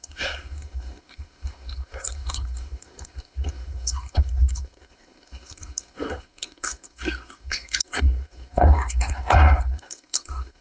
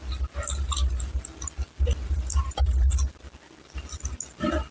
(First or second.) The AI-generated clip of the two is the first